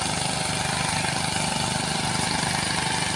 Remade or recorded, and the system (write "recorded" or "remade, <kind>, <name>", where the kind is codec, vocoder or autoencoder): recorded